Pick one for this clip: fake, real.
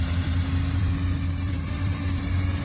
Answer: fake